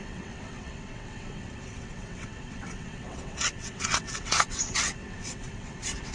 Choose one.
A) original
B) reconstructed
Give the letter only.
B